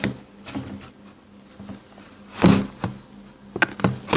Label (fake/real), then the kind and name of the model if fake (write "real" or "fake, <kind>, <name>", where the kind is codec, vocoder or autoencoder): real